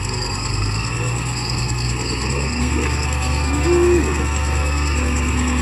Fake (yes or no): yes